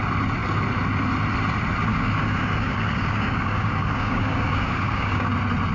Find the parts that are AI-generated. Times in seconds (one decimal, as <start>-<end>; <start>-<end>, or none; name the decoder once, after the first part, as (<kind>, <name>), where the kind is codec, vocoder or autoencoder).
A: 1.9-5.3 (codec, DAC)